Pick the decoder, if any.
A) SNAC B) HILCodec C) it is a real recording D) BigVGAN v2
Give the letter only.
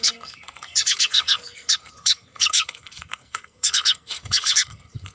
A